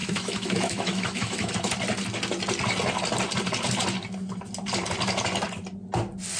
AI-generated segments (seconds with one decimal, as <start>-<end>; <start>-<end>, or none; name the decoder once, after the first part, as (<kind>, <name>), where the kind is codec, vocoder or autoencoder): 0.0-1.5 (autoencoder, DAC-VAE)